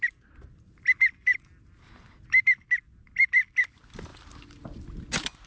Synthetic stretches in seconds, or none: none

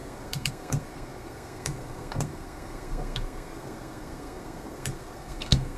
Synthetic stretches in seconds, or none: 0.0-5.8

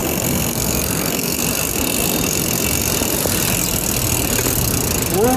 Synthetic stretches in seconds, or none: 0.0-1.4

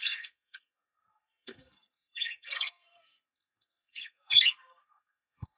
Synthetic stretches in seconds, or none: 0.0-5.6

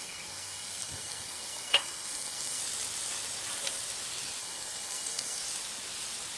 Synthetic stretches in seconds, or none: 0.0-2.6; 4.4-5.4

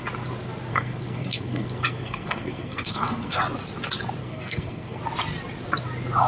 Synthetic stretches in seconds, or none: 0.7-3.4; 4.2-5.0

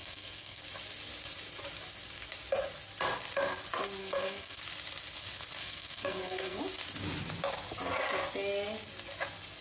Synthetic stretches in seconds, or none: 0.0-0.6; 4.0-4.6; 5.6-6.6